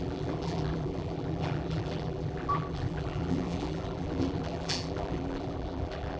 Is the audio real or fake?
fake